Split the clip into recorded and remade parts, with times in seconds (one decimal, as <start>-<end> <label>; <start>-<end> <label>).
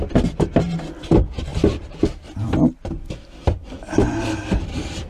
0.0-1.5 recorded; 1.5-4.6 remade; 4.6-5.1 recorded